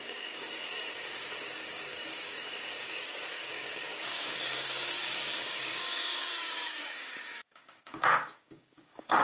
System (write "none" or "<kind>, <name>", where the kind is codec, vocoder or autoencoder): codec, DAC